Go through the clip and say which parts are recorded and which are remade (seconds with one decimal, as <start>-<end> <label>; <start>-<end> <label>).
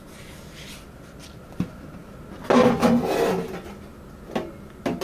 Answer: 0.0-5.0 recorded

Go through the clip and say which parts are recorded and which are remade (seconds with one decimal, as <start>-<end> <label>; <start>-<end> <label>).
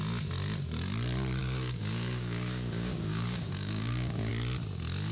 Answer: 0.0-1.4 recorded; 1.4-4.3 remade; 4.3-5.1 recorded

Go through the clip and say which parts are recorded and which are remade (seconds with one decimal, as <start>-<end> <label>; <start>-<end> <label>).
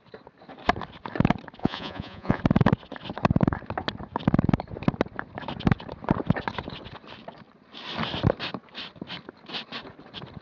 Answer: 0.0-1.6 recorded; 1.6-2.4 remade; 2.4-10.4 recorded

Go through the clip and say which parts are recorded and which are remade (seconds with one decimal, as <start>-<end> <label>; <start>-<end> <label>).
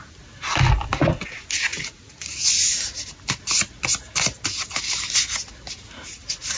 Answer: 0.0-1.7 recorded; 1.7-2.5 remade; 2.5-6.6 recorded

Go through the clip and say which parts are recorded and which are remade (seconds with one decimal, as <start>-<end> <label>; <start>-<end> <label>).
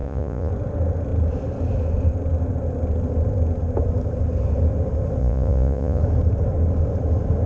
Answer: 0.0-0.5 remade; 0.5-5.2 recorded; 5.2-6.0 remade; 6.0-7.5 recorded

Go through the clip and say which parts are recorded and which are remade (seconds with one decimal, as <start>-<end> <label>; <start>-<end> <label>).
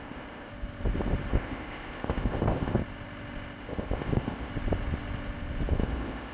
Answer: 0.0-0.5 remade; 0.5-1.3 recorded; 1.3-2.8 remade; 2.8-3.6 recorded; 3.6-4.5 remade; 4.5-5.7 recorded; 5.7-6.3 remade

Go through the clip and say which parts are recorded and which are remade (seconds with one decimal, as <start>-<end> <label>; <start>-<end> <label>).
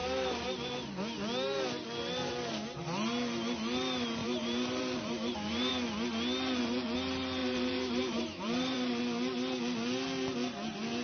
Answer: 0.0-0.7 remade; 0.7-4.2 recorded; 4.2-5.7 remade; 5.7-7.4 recorded; 7.4-9.0 remade; 9.0-11.0 recorded